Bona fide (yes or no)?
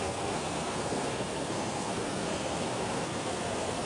no